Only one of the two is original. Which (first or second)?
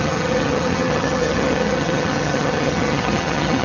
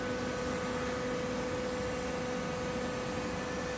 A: second